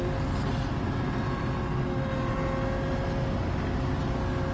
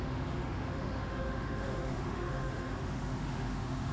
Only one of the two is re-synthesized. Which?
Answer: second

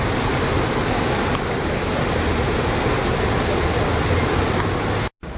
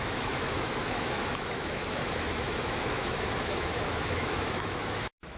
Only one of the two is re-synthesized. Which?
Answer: second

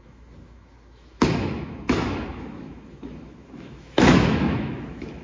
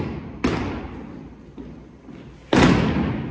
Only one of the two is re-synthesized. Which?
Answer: first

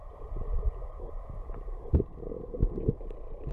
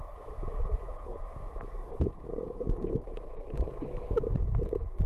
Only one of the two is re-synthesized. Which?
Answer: second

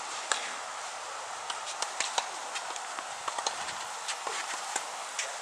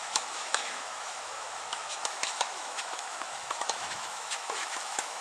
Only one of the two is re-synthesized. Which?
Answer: second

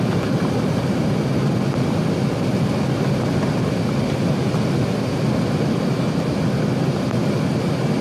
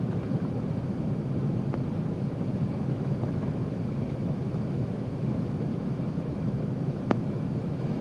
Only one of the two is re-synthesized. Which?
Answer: second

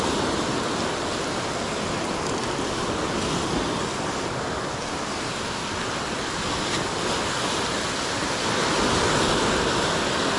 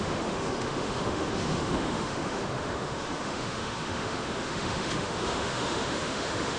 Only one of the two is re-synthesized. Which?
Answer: second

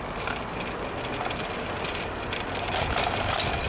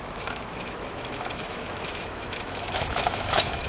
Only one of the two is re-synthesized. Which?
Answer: second